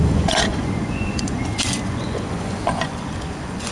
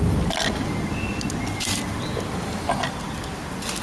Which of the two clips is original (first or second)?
second